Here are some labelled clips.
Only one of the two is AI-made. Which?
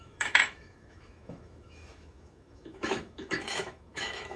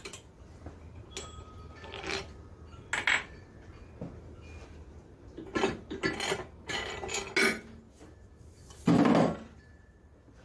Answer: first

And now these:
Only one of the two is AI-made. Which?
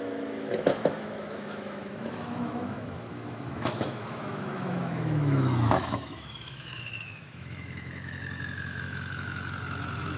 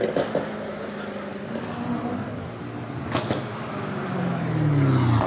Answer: first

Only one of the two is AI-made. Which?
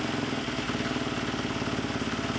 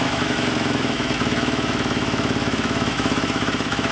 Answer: second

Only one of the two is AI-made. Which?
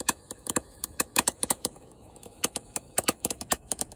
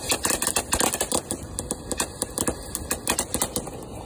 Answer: first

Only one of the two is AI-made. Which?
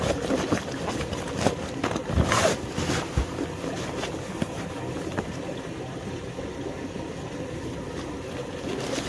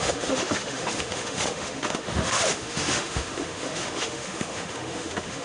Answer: second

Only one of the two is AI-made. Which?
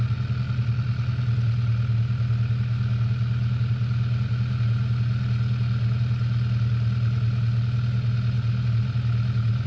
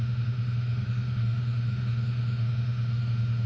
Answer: second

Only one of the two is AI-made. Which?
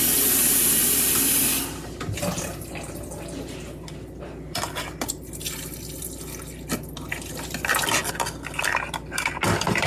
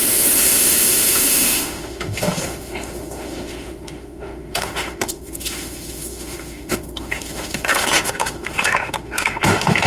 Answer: second